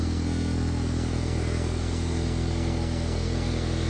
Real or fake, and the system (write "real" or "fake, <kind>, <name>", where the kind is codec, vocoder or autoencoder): fake, codec, SNAC